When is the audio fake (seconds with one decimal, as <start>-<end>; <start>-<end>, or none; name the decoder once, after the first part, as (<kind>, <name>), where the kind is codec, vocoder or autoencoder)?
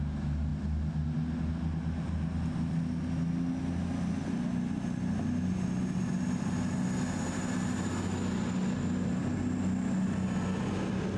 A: none